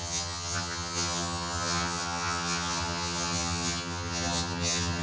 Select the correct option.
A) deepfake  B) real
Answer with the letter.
A